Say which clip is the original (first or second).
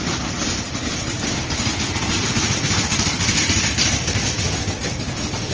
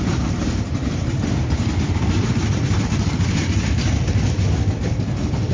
first